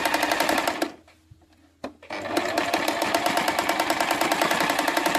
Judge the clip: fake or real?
real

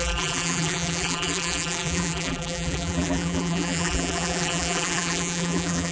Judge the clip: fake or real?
fake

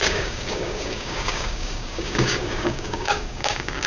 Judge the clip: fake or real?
fake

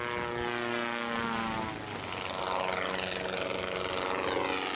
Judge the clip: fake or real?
real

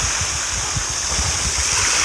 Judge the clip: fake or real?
real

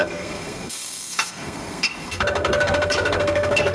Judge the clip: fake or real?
fake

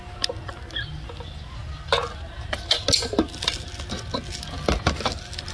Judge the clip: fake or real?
real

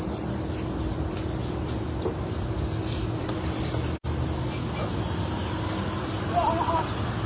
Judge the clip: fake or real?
real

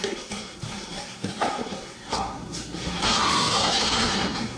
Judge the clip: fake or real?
fake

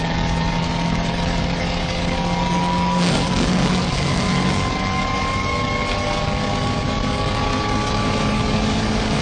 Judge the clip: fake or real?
fake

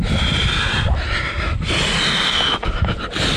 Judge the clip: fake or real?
real